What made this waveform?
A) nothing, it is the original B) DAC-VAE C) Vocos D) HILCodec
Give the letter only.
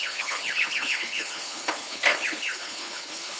D